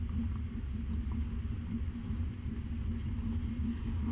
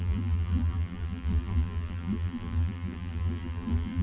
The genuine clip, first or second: first